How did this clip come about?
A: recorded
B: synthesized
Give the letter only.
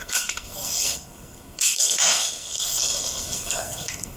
B